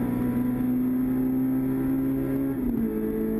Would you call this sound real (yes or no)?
yes